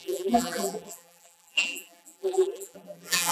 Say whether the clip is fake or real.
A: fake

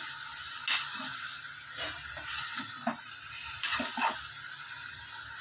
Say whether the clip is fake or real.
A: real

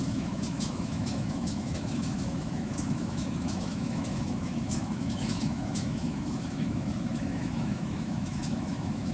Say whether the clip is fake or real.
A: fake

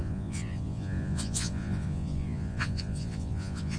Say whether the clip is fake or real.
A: fake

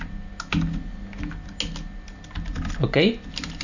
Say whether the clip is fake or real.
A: real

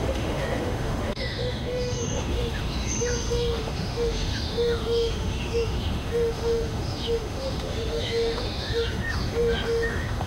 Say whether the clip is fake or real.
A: fake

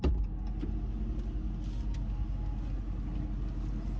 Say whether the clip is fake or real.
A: real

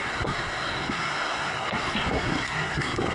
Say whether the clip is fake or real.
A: fake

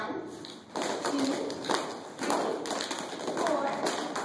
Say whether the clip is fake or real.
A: real